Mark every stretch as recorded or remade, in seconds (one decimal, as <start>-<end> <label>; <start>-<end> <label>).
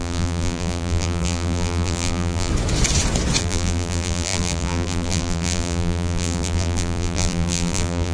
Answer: 0.0-2.5 remade; 2.5-3.4 recorded; 3.4-8.1 remade